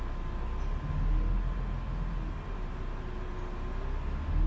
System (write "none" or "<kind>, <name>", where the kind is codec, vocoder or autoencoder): none